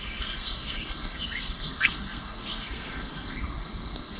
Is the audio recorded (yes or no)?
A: no